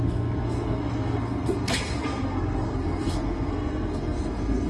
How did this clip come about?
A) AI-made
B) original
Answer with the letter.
A